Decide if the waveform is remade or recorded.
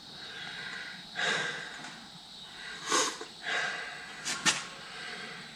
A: recorded